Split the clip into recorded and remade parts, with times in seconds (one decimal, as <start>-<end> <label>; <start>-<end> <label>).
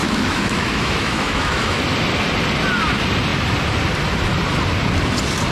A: 0.0-1.8 remade; 1.8-5.5 recorded